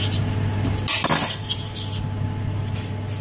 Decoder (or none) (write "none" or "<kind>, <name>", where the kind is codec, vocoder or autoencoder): none